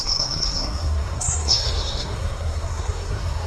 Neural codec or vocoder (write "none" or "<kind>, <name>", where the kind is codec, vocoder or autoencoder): codec, SNAC